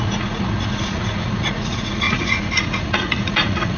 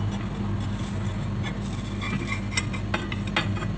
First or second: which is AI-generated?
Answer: first